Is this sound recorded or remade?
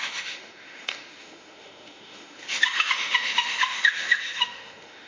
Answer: remade